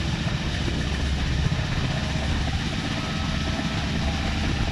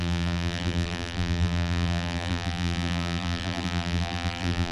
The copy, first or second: second